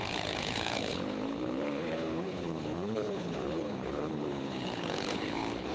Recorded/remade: remade